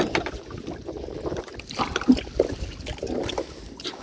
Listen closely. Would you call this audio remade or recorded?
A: recorded